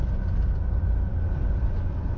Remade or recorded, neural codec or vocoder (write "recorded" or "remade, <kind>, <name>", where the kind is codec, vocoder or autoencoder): recorded